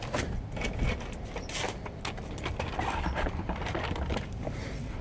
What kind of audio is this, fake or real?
real